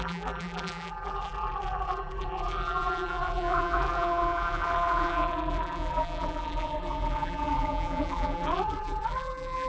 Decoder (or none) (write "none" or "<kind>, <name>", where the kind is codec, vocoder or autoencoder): vocoder, BigVGAN v2